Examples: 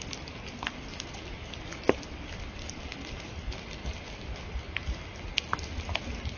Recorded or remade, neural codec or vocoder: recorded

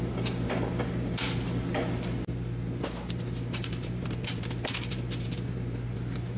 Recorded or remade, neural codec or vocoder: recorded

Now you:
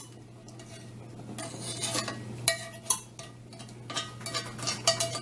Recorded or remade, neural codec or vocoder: recorded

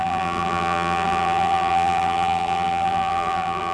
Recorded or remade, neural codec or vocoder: remade, vocoder, BigVGAN v2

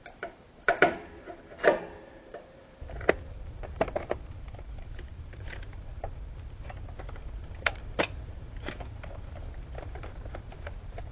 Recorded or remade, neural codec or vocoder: remade, vocoder, BigVGAN v2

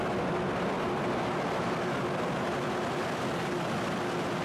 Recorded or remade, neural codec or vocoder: recorded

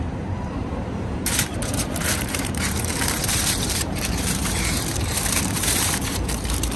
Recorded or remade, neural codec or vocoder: remade, vocoder, BigVGAN v2